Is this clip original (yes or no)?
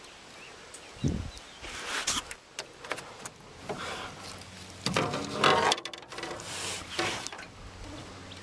yes